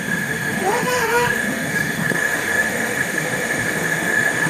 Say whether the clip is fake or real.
fake